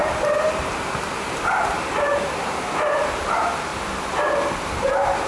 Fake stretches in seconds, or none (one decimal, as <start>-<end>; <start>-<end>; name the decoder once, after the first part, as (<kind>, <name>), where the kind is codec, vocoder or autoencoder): 0.0-3.7 (vocoder, BigVGAN v2); 4.8-5.3